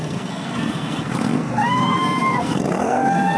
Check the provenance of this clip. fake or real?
fake